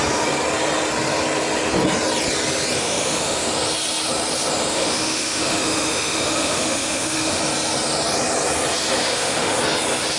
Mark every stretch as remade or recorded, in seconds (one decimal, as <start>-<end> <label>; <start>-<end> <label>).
0.0-2.8 recorded; 2.8-3.5 remade; 3.5-4.7 recorded; 4.7-7.4 remade; 7.4-9.0 recorded; 9.0-9.6 remade; 9.6-10.2 recorded